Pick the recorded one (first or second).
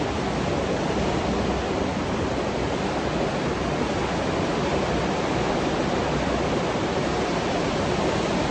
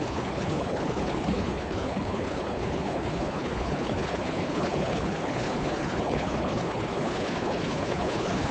first